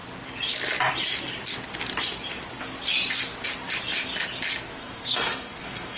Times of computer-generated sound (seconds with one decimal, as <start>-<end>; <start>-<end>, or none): 4.8-6.0